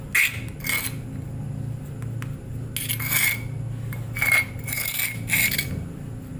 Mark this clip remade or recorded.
recorded